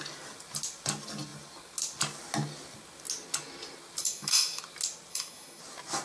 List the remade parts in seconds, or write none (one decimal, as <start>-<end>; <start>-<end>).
4.0-4.6; 5.1-5.6